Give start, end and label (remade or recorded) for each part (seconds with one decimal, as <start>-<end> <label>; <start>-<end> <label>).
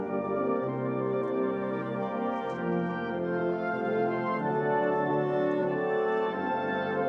0.0-7.1 recorded